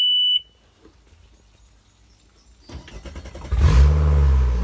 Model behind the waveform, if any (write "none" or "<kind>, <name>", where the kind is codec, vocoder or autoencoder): none